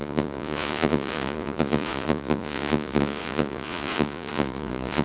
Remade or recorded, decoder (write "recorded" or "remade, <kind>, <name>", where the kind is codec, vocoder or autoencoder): remade, vocoder, Vocos